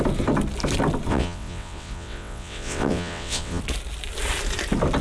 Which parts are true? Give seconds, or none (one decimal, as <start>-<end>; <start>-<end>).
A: 0.0-1.1; 3.6-5.0